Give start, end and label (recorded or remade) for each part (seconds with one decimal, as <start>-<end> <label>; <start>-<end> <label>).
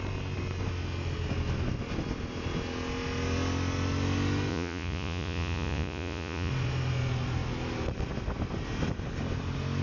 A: 0.0-4.5 recorded; 4.5-6.5 remade; 6.5-9.8 recorded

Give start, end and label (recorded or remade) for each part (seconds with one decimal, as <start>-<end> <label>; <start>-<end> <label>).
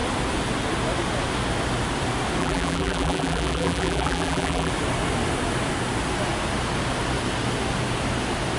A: 0.0-2.4 recorded; 2.4-4.7 remade; 4.7-8.6 recorded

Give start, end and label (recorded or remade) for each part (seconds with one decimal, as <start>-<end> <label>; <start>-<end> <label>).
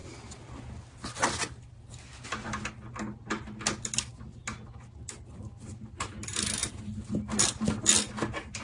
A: 0.0-8.6 recorded